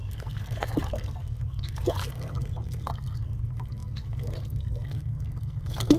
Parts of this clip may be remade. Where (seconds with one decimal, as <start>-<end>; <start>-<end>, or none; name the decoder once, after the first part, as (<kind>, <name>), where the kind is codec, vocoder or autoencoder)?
0.0-6.0 (codec, SNAC)

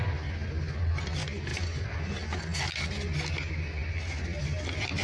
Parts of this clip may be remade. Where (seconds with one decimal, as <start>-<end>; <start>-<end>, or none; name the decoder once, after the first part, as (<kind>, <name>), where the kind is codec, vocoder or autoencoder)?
none

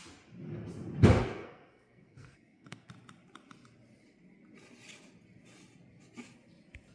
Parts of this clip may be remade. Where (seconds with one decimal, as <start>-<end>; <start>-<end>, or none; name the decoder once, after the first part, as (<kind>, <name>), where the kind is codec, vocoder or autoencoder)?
1.2-2.9 (codec, SNAC)

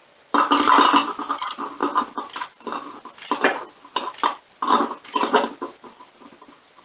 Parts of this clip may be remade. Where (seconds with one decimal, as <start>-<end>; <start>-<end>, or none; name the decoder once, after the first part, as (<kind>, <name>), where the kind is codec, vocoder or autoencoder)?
none

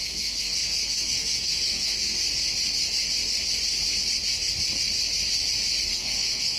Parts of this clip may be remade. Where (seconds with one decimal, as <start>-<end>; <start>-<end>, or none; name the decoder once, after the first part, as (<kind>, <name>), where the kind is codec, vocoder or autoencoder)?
0.0-2.2 (codec, SNAC); 5.8-6.6

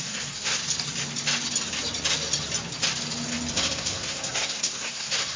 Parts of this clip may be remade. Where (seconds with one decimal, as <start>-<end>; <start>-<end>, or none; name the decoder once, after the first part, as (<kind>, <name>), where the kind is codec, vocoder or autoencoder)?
0.0-0.6 (codec, SNAC); 3.5-5.4